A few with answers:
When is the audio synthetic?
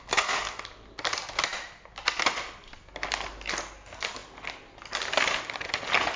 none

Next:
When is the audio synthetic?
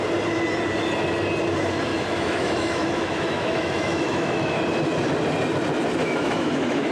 1.9-4.6 (autoencoder, DAC-VAE); 6.0-6.9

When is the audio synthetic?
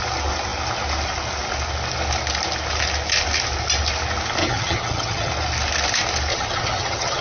4.4-5.3 (vocoder, HiFi-GAN); 6.3-7.2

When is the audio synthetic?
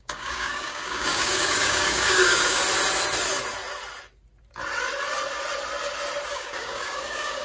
0.0-2.6 (codec, DAC); 6.3-7.4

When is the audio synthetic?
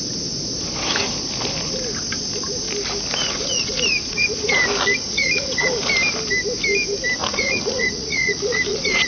3.2-4.6 (vocoder, Vocos); 5.1-5.7; 7.2-9.1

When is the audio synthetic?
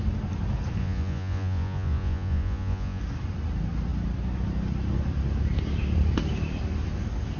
0.8-3.0 (vocoder, Vocos)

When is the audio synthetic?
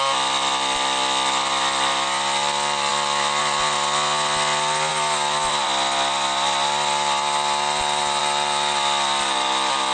none